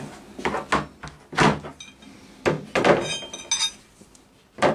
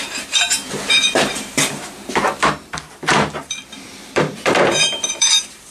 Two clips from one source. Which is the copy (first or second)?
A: second